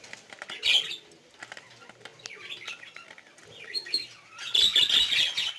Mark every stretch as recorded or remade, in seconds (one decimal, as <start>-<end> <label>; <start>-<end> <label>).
0.0-5.6 recorded